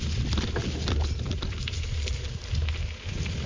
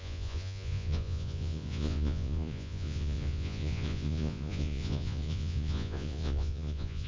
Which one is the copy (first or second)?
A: second